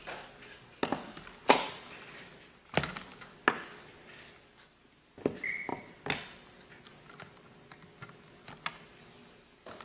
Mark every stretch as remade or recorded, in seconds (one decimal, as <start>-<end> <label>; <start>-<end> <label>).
0.0-9.8 recorded